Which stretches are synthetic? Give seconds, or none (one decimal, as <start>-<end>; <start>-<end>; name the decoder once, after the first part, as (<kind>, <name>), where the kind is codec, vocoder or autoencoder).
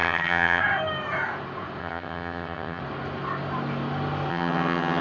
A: 0.0-0.6 (vocoder, HiFi-GAN); 1.8-2.8; 4.3-5.0